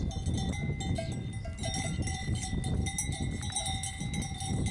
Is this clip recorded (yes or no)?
yes